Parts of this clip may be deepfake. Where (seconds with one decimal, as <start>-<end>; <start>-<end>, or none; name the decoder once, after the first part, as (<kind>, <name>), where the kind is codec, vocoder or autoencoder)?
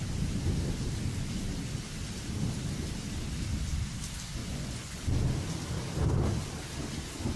4.4-5.0 (vocoder, Vocos)